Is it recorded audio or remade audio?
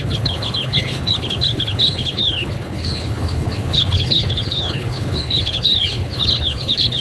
remade